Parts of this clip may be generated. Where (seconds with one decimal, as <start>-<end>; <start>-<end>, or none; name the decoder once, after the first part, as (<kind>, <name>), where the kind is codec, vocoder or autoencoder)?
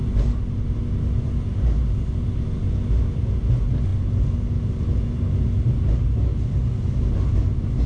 none